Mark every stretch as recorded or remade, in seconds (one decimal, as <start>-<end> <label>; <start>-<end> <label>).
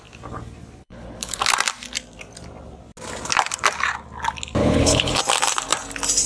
0.0-0.8 recorded; 0.8-1.4 remade; 1.4-4.6 recorded; 4.6-5.2 remade; 5.2-6.3 recorded